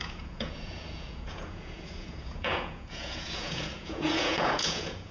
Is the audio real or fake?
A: fake